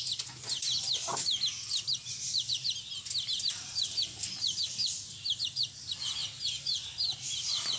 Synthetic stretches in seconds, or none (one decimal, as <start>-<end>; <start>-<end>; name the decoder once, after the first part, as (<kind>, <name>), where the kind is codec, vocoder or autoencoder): none